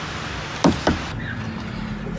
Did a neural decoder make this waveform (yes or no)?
yes